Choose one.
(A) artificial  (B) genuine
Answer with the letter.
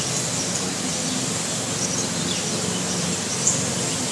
B